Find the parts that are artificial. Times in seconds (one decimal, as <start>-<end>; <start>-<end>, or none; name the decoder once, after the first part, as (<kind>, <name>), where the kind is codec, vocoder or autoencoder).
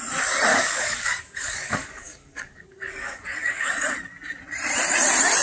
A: 0.5-3.7 (codec, DAC)